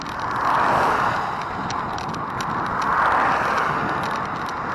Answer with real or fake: real